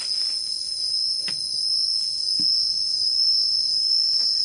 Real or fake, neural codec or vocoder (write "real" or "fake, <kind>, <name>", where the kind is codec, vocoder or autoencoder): real